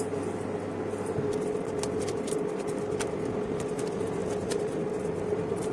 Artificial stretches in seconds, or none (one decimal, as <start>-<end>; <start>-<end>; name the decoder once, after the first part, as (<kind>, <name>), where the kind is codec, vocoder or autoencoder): 4.2-5.7 (vocoder, BigVGAN v2)